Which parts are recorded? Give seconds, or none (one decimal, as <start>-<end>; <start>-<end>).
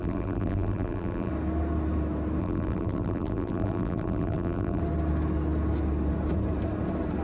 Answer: 1.3-2.4; 4.8-7.2